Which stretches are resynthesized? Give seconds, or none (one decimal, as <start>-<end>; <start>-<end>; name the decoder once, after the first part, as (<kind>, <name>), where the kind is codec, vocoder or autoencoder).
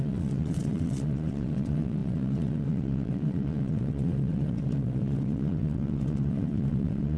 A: 0.0-7.2 (vocoder, WaveNeXt)